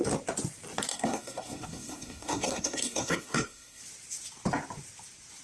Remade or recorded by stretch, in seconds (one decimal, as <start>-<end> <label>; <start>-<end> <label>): 0.0-0.9 recorded; 0.9-3.8 remade; 3.8-5.4 recorded